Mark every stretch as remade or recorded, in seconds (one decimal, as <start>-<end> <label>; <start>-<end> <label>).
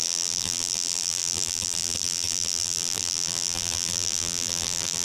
0.0-5.0 remade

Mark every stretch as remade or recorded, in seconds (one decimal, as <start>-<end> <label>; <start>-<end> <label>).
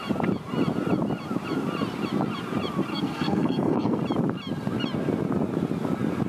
0.0-2.9 recorded; 2.9-4.0 remade; 4.0-6.3 recorded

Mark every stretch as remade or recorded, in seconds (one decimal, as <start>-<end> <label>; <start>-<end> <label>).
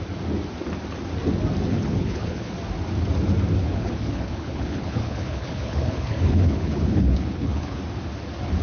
0.0-1.7 recorded; 1.7-2.5 remade; 2.5-3.6 recorded; 3.6-7.8 remade; 7.8-8.6 recorded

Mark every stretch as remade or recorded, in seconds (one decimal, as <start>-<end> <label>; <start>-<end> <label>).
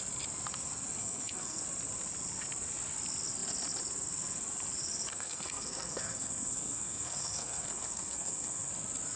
0.0-1.0 recorded; 1.0-1.6 remade; 1.6-5.1 recorded; 5.1-8.7 remade; 8.7-9.2 recorded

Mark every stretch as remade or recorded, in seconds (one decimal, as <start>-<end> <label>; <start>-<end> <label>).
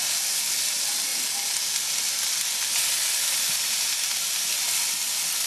0.0-5.5 recorded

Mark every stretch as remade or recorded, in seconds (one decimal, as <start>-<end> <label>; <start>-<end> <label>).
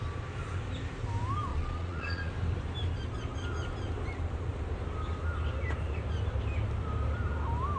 0.0-1.5 recorded; 1.5-2.3 remade; 2.3-7.8 recorded